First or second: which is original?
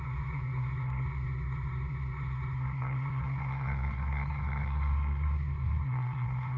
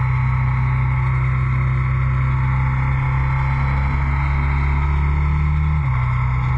second